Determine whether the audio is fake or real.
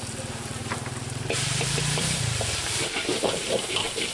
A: fake